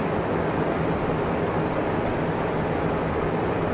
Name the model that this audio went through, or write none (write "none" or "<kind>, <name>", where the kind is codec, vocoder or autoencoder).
none